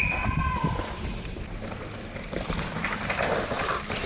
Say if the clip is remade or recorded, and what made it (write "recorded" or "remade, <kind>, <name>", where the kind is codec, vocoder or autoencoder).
remade, vocoder, BigVGAN v2